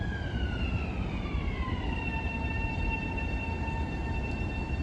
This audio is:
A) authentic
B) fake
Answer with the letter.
B